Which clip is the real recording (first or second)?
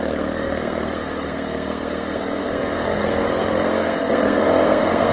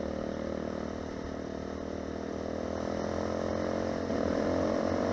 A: second